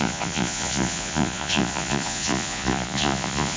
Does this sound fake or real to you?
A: fake